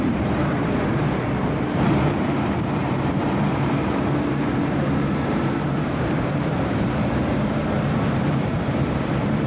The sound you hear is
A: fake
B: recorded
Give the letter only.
A